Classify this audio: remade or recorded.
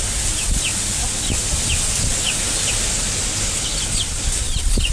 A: recorded